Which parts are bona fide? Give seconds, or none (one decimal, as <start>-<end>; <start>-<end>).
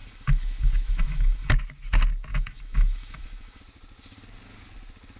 1.5-2.3; 3.6-5.2